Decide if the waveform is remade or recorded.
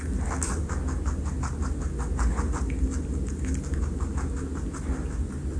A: recorded